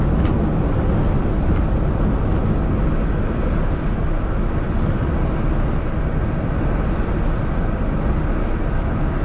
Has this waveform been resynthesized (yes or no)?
no